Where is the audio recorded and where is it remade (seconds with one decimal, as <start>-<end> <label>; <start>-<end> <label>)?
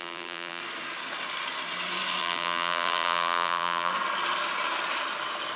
0.0-0.6 remade; 0.6-2.2 recorded; 2.2-3.9 remade; 3.9-5.6 recorded